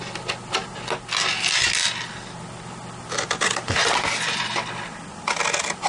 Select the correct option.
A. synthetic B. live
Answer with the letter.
B